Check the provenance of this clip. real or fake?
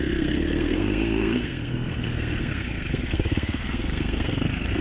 fake